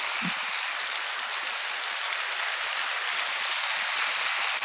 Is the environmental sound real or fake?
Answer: real